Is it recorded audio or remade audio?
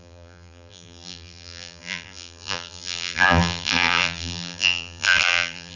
remade